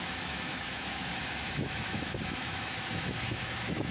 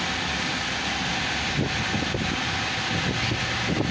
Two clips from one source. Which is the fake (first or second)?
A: first